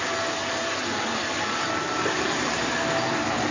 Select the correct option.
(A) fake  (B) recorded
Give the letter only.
B